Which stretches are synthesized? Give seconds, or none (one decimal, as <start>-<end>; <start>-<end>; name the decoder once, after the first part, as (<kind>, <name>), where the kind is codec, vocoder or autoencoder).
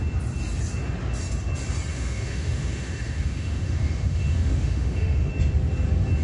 1.9-5.3 (autoencoder, DAC-VAE)